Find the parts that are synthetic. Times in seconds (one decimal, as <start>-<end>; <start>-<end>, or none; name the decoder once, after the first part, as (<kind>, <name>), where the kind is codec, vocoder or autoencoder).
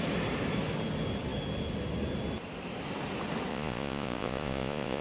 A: 3.5-5.0 (vocoder, Vocos)